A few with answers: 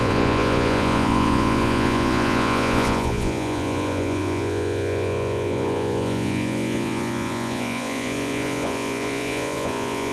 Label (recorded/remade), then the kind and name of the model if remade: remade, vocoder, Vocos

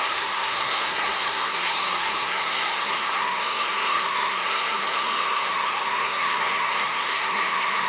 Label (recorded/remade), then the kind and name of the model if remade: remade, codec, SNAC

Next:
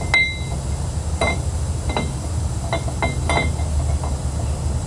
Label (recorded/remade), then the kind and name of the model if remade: recorded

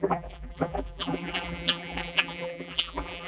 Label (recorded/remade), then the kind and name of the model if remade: remade, vocoder, BigVGAN v2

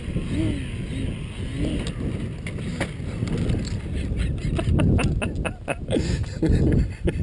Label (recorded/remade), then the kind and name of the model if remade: recorded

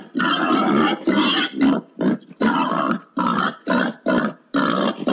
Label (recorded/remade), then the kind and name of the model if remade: recorded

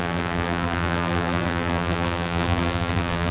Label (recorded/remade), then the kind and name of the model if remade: remade, vocoder, BigVGAN v2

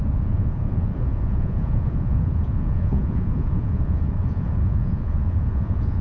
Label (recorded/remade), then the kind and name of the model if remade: remade, vocoder, Vocos